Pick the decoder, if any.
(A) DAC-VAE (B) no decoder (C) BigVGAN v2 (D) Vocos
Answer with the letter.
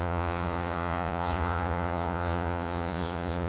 D